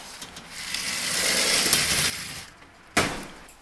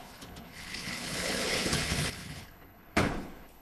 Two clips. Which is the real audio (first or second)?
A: first